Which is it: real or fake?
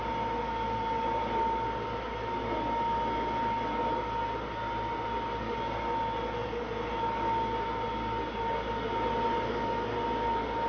real